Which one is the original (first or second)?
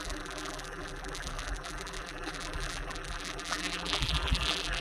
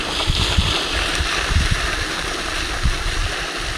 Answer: second